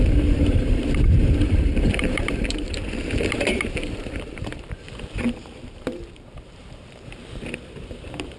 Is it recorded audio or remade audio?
remade